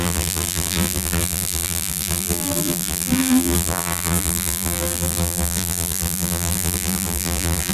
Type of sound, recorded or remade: remade